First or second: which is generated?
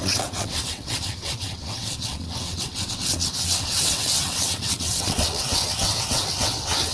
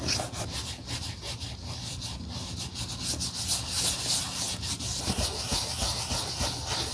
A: first